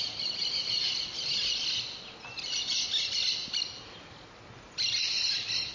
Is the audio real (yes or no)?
yes